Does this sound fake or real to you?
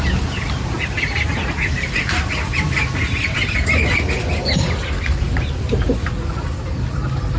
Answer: real